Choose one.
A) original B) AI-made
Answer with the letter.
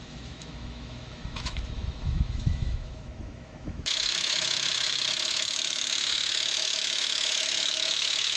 B